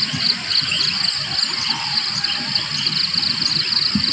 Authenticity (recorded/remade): recorded